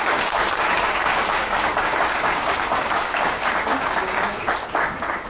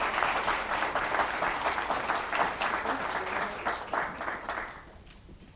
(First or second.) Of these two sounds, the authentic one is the second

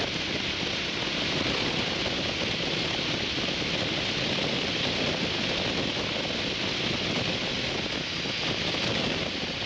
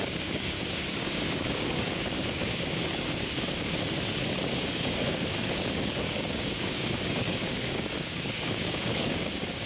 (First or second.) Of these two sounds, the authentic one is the first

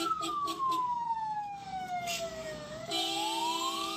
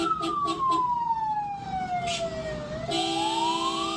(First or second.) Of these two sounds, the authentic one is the second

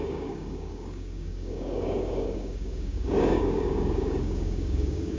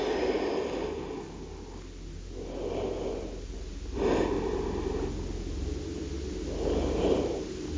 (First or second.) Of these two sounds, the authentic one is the second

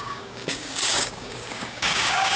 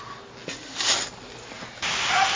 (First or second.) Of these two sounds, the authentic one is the second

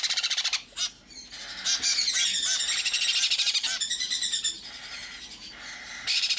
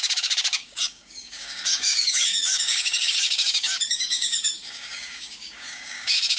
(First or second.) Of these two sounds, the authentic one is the first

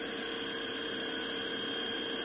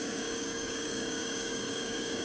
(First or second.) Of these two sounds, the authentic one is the first